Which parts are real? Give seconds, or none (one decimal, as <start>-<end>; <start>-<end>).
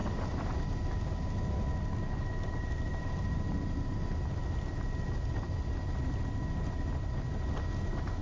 0.0-2.9; 3.5-8.2